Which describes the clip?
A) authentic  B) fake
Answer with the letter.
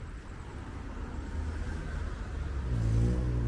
A